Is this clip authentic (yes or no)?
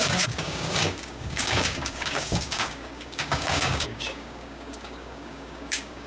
no